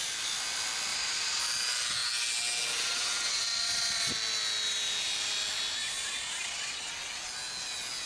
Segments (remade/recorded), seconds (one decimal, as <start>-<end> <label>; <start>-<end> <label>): 0.0-0.9 recorded; 0.9-1.4 remade; 1.4-3.5 recorded; 3.5-4.1 remade; 4.1-5.8 recorded; 5.8-6.9 remade; 6.9-8.1 recorded